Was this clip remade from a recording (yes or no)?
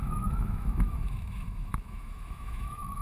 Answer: yes